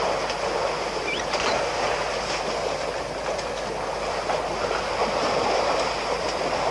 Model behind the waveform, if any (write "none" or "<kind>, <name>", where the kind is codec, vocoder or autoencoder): none